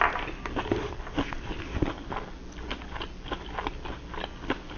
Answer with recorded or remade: recorded